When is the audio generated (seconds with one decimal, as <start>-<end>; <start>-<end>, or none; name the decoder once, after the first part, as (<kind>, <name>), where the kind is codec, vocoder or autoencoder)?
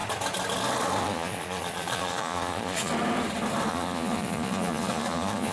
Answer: 1.0-2.9 (vocoder, Vocos); 3.7-5.5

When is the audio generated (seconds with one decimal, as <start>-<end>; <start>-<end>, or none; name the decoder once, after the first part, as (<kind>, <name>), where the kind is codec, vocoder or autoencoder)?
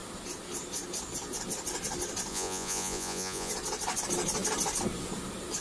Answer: 2.3-3.5 (vocoder, Vocos)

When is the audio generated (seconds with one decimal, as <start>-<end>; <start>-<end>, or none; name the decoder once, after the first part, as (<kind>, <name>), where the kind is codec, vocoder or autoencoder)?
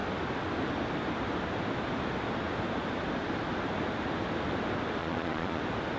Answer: 5.0-5.6 (vocoder, Vocos)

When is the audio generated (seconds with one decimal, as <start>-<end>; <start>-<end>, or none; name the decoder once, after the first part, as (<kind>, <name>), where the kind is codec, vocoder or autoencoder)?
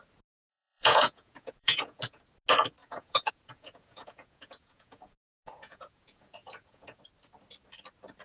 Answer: 0.5-2.2 (vocoder, Vocos); 2.8-7.0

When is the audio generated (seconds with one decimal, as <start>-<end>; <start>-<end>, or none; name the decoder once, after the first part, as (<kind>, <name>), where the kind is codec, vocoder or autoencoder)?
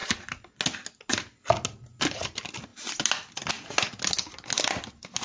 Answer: none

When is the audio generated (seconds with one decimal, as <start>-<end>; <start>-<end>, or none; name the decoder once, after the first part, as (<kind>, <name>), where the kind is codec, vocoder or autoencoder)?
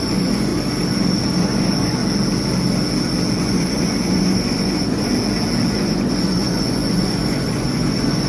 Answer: 0.0-0.5 (vocoder, Vocos); 1.4-2.0; 3.4-5.1; 5.7-8.3